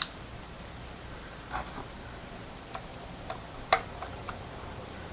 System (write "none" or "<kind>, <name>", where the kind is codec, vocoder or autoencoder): vocoder, BigVGAN v2